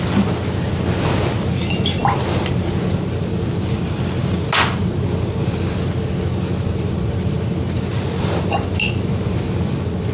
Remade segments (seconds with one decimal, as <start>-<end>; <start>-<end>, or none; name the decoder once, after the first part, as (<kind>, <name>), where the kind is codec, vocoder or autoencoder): none

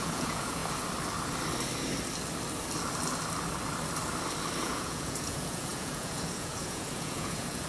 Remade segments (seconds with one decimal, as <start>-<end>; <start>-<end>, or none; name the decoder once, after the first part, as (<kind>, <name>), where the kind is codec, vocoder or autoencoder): 0.0-0.6 (vocoder, Vocos); 4.6-7.7

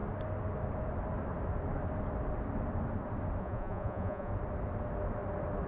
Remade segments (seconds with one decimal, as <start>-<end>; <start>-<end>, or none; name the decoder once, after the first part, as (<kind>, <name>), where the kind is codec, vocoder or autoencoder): 3.4-4.3 (vocoder, Vocos)

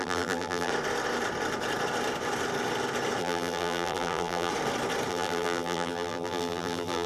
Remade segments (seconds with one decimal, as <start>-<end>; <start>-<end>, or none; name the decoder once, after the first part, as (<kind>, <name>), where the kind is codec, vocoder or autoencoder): 0.0-0.7 (vocoder, BigVGAN v2); 3.2-4.5; 5.1-7.1

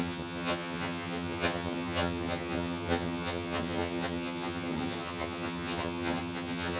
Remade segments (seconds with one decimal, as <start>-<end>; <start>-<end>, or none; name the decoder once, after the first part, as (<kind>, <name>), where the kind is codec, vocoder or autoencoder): 0.0-6.8 (vocoder, HiFi-GAN)